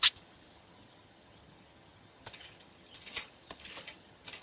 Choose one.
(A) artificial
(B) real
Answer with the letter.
A